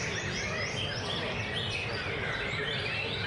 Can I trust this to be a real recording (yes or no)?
yes